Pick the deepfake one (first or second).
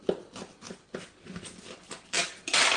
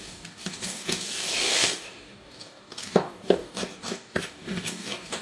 second